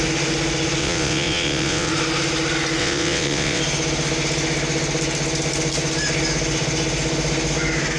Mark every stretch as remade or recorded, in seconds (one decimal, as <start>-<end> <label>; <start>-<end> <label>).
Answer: 0.0-0.8 recorded; 0.8-1.9 remade; 1.9-2.8 recorded; 2.8-3.6 remade; 3.6-8.0 recorded